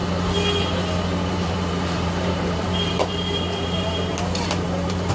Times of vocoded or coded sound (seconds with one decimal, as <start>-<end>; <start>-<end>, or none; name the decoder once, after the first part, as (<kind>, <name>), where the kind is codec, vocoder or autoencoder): 1.3-5.1 (vocoder, BigVGAN v2)